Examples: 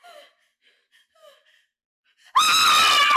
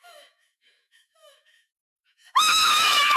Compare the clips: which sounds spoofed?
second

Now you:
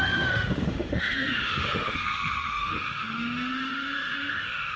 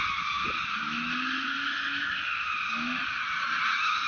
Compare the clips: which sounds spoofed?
first